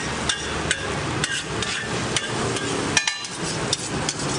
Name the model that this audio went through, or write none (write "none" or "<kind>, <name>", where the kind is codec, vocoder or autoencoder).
none